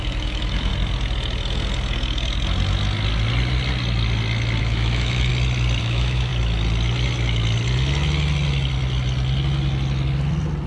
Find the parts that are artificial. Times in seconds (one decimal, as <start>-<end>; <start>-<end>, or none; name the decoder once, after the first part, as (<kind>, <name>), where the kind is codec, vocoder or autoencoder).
0.0-0.7 (autoencoder, DAC-VAE); 4.6-5.3; 5.8-6.3